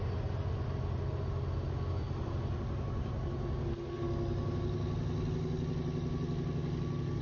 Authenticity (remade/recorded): recorded